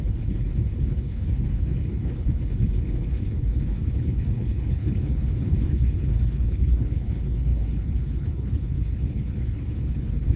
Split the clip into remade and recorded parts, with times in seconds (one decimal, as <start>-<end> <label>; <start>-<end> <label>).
0.0-10.4 remade